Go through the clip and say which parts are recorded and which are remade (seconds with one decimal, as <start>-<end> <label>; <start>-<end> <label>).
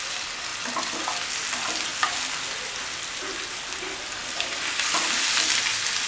0.0-6.1 recorded